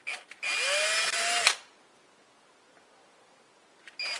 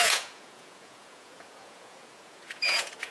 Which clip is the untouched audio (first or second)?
first